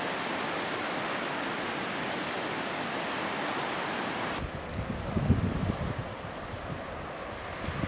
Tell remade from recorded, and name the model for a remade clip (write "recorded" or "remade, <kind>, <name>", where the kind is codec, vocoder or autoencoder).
recorded